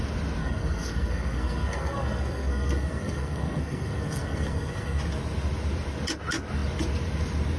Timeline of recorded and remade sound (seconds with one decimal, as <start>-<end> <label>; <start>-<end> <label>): 0.0-0.4 recorded; 0.4-5.0 remade; 5.0-7.6 recorded